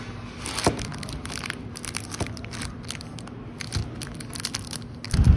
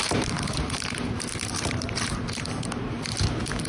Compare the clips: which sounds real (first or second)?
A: first